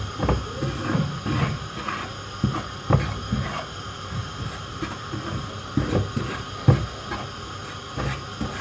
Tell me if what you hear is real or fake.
real